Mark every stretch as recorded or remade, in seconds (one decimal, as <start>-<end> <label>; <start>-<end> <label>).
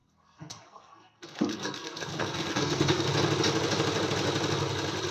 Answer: 0.0-3.1 remade; 3.1-5.1 recorded